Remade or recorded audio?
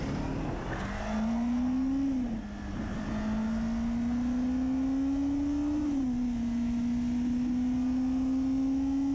recorded